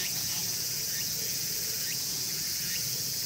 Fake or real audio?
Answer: fake